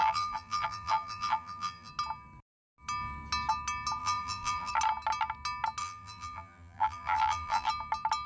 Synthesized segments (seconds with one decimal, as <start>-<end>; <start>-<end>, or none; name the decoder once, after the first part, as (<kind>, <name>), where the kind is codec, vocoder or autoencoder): 0.0-1.9 (vocoder, BigVGAN v2); 4.0-4.7; 5.8-7.7